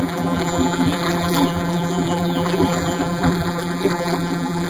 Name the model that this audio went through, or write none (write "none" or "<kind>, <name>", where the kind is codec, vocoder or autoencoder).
vocoder, BigVGAN v2